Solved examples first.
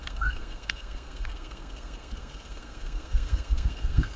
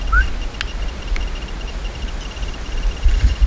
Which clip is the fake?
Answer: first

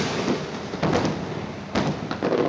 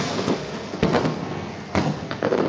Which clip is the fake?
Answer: second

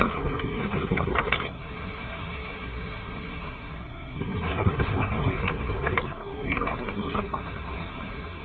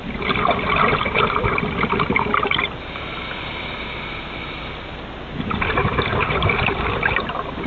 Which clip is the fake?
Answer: first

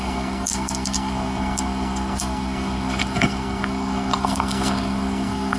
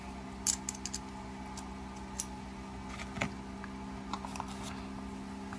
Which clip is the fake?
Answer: first